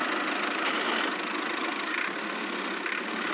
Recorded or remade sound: recorded